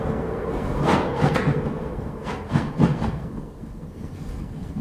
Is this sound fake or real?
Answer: fake